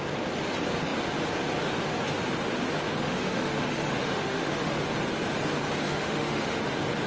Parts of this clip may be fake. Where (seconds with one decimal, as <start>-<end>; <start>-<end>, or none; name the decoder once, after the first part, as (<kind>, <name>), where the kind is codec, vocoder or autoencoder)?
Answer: 3.0-4.8 (autoencoder, DAC-VAE); 5.8-6.6